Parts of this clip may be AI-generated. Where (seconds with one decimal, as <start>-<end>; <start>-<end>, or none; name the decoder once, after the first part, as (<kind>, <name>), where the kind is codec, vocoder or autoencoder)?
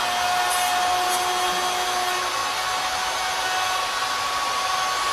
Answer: none